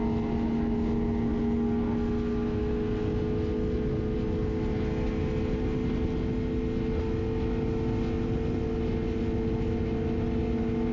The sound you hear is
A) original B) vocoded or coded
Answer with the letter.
A